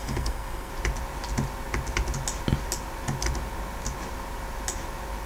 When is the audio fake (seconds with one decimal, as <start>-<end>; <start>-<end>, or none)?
0.0-0.7